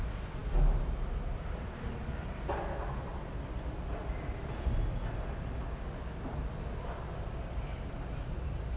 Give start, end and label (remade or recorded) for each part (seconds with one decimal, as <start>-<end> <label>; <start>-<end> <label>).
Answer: 0.0-8.8 recorded